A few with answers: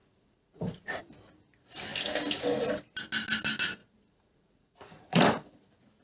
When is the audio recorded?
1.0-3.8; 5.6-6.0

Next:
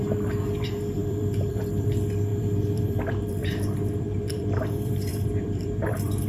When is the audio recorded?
0.0-1.0; 1.9-2.3

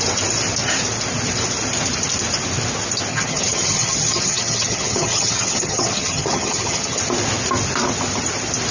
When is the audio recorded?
0.0-3.1; 7.0-8.7

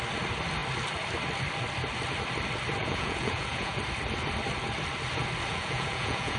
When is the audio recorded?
0.0-2.8; 3.8-5.5